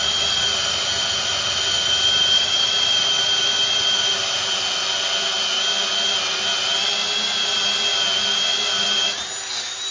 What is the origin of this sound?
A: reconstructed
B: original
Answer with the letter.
B